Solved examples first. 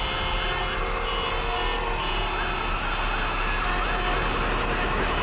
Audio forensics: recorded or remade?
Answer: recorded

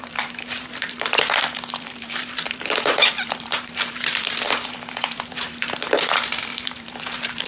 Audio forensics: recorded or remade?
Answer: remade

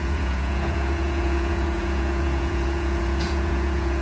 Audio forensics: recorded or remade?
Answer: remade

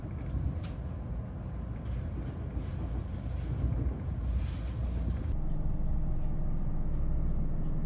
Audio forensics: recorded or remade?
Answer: recorded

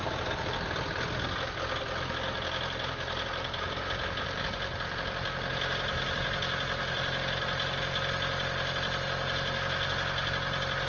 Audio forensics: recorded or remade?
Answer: recorded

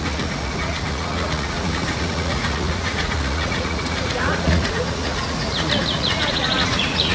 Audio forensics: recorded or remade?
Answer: remade